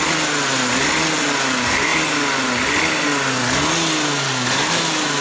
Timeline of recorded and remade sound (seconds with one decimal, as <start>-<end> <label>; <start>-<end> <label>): 0.0-5.2 recorded

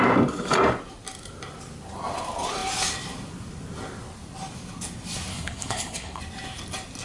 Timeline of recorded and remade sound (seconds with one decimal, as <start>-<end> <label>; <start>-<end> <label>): 0.0-5.3 recorded; 5.3-6.2 remade; 6.2-7.0 recorded